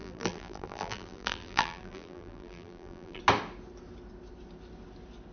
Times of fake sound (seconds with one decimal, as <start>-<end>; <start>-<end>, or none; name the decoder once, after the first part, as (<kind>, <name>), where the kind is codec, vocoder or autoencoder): 0.0-3.2 (vocoder, BigVGAN v2)